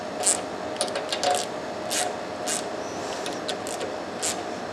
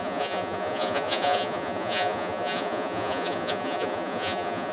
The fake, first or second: second